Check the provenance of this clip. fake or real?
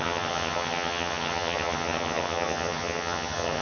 fake